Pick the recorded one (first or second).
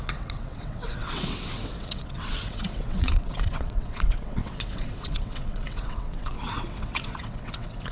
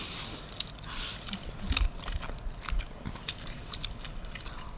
second